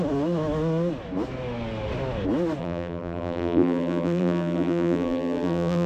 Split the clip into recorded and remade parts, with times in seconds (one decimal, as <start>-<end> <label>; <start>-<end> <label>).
0.0-2.6 recorded; 2.6-5.9 remade